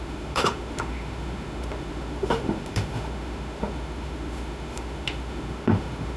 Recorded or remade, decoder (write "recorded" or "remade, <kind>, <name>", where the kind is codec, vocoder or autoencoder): remade, autoencoder, DAC-VAE